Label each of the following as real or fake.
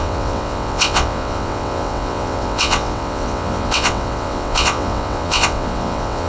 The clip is fake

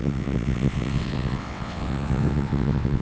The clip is fake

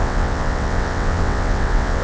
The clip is fake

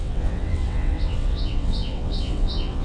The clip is fake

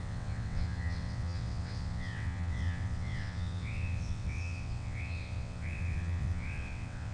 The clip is fake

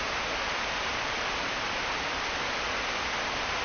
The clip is real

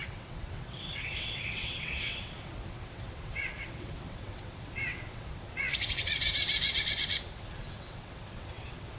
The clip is fake